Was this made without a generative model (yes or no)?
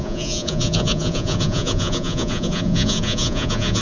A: no